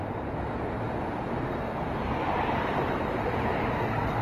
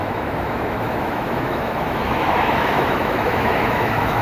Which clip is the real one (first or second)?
first